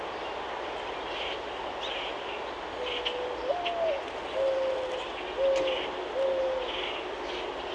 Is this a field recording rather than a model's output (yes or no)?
yes